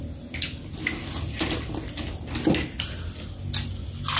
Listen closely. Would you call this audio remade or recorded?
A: recorded